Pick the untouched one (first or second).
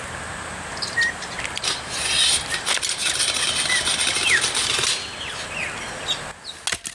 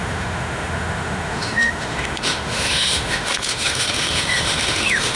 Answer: first